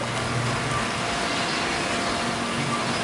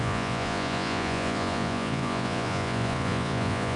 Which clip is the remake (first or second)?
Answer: second